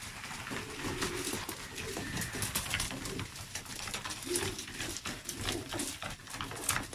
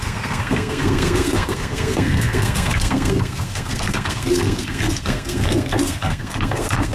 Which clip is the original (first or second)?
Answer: first